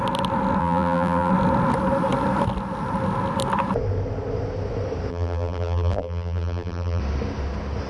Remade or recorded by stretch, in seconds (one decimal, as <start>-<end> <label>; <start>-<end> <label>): 0.0-0.6 recorded; 0.6-1.3 remade; 1.3-5.1 recorded; 5.1-7.0 remade; 7.0-7.9 recorded